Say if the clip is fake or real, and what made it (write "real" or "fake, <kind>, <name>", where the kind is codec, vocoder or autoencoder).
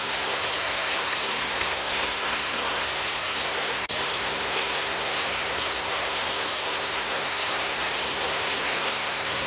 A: fake, codec, SNAC